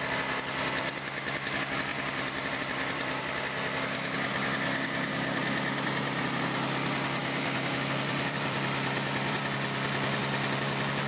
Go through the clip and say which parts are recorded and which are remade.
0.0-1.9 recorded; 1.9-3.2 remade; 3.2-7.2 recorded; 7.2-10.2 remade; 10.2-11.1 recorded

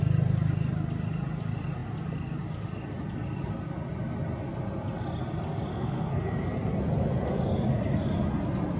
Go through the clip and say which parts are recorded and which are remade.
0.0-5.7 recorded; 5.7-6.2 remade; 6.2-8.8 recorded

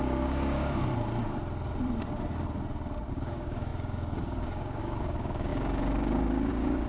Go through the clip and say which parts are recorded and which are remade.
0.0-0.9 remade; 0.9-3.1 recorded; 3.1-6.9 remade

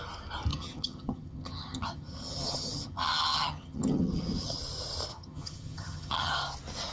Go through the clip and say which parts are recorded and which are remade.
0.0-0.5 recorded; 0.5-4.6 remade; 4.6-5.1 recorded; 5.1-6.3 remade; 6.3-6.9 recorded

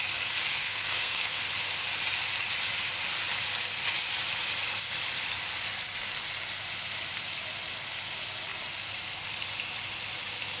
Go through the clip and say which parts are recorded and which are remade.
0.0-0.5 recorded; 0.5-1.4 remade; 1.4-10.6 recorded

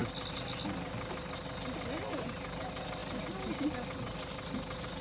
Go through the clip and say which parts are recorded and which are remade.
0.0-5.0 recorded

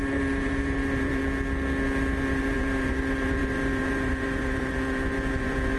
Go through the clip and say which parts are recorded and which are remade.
0.0-1.2 remade; 1.2-2.4 recorded; 2.4-5.8 remade